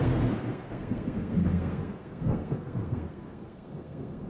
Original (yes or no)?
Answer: no